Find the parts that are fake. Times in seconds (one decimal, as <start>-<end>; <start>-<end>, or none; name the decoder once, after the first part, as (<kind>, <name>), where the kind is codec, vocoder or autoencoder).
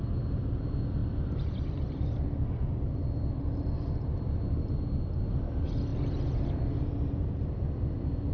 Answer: 1.0-2.1 (vocoder, BigVGAN v2); 3.6-5.3